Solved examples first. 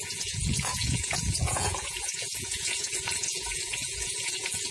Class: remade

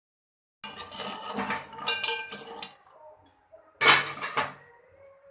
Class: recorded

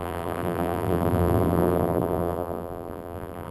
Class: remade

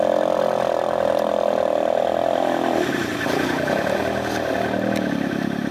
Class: recorded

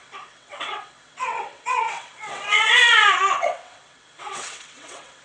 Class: remade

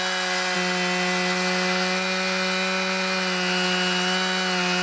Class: recorded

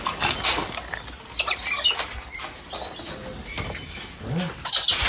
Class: recorded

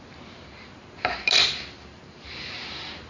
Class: recorded